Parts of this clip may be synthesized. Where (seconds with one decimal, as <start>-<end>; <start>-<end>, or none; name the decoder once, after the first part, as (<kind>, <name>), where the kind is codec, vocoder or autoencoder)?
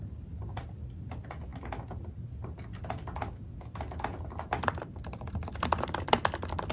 none